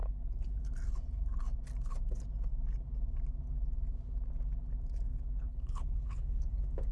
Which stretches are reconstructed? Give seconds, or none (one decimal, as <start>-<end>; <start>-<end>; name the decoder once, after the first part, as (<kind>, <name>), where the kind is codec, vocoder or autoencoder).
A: 0.0-0.6 (codec, HILCodec); 5.1-6.5